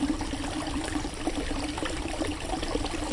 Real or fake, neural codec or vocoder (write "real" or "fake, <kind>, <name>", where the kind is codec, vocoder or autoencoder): fake, vocoder, BigVGAN v2